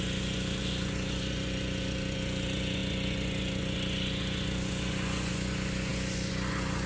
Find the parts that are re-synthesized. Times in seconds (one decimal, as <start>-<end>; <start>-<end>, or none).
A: 0.0-6.9